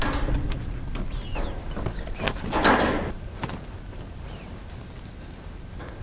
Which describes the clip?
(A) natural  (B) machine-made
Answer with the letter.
A